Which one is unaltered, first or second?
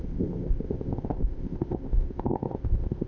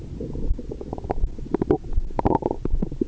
second